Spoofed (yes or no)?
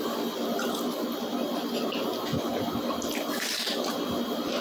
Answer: no